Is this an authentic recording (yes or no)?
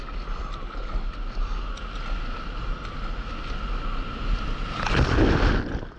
yes